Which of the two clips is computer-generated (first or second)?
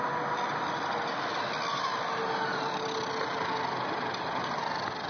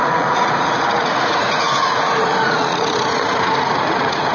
second